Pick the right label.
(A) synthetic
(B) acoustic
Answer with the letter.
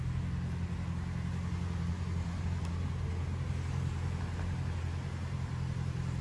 B